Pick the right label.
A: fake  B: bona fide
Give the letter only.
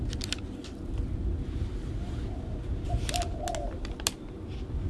B